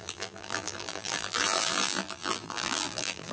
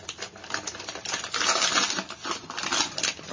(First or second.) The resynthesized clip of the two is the first